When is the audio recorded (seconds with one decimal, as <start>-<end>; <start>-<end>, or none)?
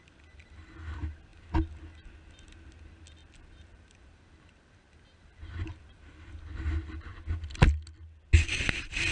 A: 0.0-3.2; 6.4-9.1